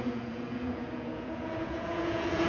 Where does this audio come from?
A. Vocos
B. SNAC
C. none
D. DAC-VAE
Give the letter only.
A